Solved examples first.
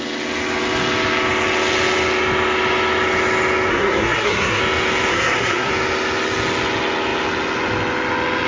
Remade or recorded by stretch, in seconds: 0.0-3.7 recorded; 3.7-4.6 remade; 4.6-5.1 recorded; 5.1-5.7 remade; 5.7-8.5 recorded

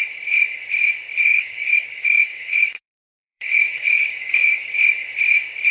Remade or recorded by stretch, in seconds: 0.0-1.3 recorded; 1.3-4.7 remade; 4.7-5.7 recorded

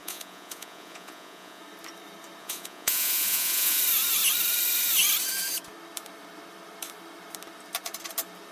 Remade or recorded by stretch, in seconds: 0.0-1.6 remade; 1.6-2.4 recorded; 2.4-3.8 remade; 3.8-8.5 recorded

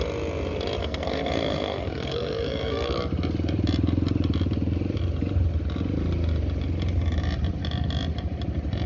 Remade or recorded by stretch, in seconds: 0.0-0.8 recorded; 0.8-3.0 remade; 3.0-8.9 recorded

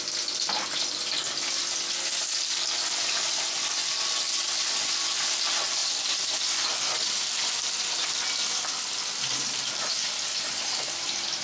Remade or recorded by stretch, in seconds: 0.0-11.4 recorded

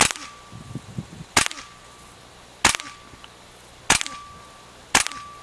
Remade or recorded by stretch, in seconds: 0.0-5.4 recorded